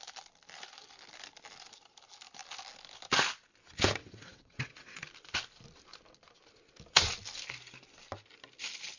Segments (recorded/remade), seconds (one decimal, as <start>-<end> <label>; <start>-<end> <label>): 0.0-4.0 recorded; 4.0-5.0 remade; 5.0-9.0 recorded